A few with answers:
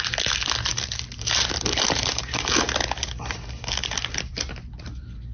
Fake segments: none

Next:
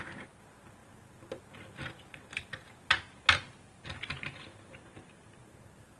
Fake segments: none

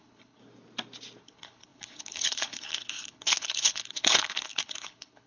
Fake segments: 0.0-0.4 (codec, HILCodec); 1.2-5.3

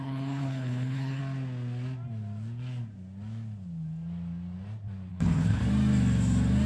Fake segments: 0.0-1.2 (codec, HILCodec); 5.1-5.6

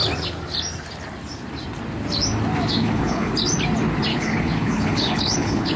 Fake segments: 2.8-3.3 (codec, HILCodec); 4.1-5.8

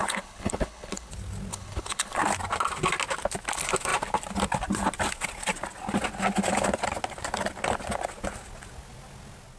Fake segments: 0.0-1.1 (codec, HILCodec); 1.5-2.2

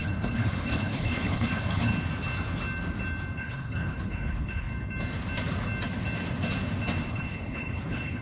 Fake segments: 0.0-1.9 (codec, HILCodec); 3.4-4.7; 7.1-8.2